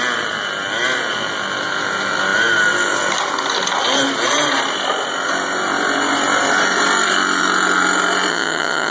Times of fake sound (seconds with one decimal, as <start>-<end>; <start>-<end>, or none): 8.3-8.9